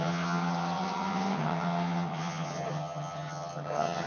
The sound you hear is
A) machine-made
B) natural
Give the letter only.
A